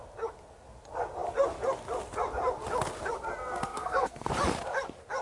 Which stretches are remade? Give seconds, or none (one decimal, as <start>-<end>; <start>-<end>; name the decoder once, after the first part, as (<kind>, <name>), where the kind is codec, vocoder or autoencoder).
3.7-4.3 (codec, SNAC)